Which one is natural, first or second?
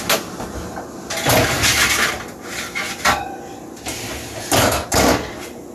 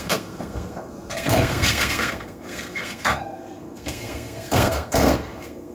first